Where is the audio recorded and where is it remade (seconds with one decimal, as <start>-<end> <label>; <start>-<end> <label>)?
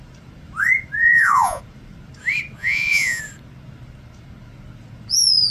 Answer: 0.0-1.0 recorded; 1.0-1.6 remade; 1.6-2.6 recorded; 2.6-3.2 remade; 3.2-5.5 recorded